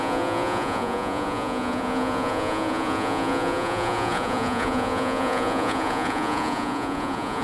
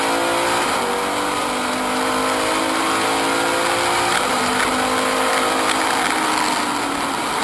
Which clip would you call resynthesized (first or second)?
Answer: first